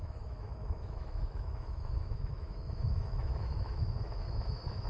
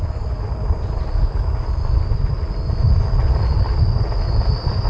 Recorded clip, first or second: second